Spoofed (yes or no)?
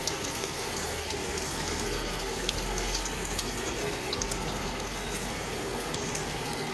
yes